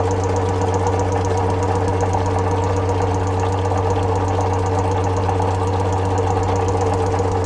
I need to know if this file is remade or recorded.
recorded